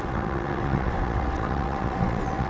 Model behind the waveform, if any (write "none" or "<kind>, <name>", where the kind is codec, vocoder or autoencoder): vocoder, WaveNeXt